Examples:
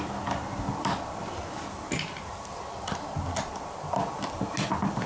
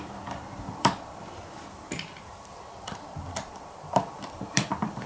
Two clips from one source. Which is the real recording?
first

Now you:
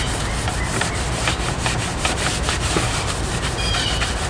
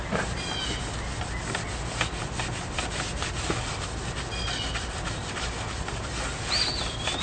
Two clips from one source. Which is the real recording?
second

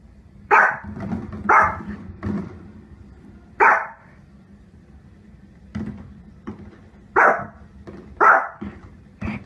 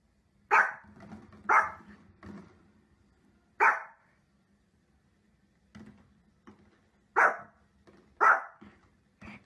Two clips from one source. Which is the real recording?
second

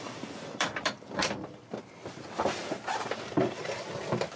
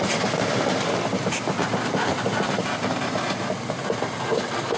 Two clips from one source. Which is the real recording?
second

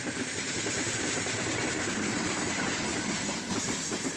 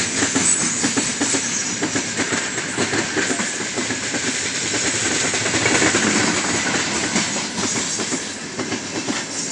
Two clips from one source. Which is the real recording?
second